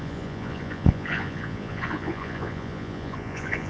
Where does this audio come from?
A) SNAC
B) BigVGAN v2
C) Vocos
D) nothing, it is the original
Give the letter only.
C